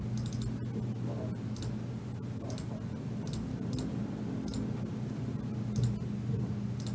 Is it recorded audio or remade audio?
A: recorded